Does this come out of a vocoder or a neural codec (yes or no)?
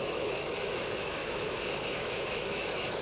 yes